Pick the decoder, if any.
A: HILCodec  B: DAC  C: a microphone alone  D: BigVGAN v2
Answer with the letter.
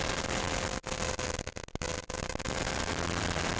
C